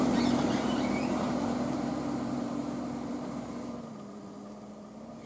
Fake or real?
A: fake